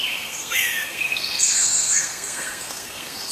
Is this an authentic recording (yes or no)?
no